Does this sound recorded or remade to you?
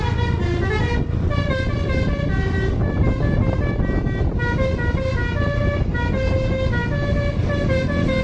recorded